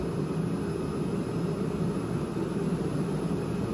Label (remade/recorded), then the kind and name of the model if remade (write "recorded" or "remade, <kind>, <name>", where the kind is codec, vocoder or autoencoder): recorded